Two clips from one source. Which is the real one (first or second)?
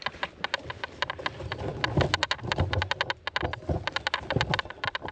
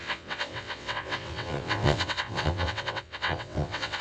first